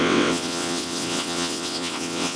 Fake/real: fake